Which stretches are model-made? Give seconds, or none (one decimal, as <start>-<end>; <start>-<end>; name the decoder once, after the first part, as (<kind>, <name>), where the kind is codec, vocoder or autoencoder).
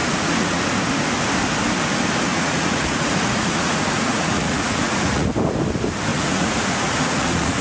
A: 0.0-0.6 (vocoder, Vocos); 2.3-5.3; 6.1-7.6